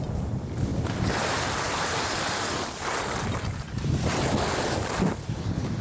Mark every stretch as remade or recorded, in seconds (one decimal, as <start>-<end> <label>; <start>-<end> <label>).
0.0-5.8 recorded